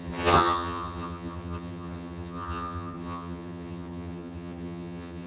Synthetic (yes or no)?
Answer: yes